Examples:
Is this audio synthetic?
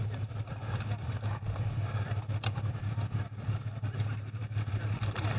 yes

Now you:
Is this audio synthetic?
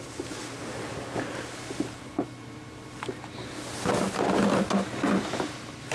no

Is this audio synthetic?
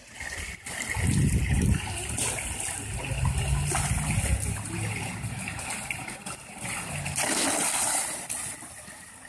yes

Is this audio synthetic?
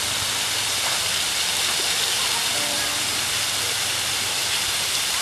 yes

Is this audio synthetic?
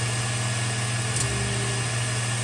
no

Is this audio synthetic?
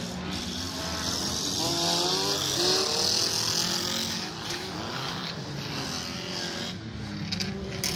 no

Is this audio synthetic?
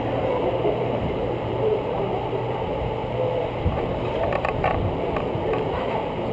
yes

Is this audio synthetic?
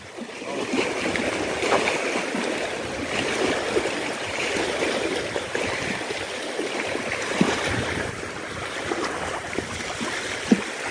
yes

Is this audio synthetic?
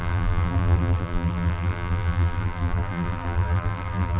yes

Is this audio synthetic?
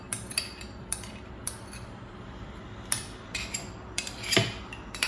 yes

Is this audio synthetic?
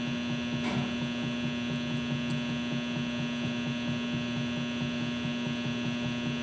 no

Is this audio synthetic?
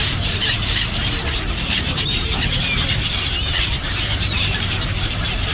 yes